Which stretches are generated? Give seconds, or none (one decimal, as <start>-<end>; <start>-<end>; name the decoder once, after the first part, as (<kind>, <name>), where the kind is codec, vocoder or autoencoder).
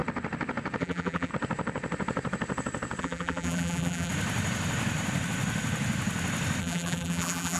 0.8-1.3 (vocoder, BigVGAN v2); 3.0-4.1; 6.6-7.6